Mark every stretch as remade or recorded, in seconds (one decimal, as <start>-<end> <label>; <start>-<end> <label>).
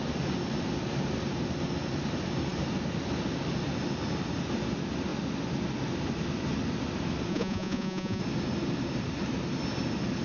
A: 0.0-7.3 recorded; 7.3-8.2 remade; 8.2-10.2 recorded